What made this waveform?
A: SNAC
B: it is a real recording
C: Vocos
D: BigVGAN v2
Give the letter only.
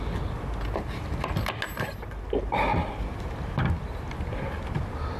B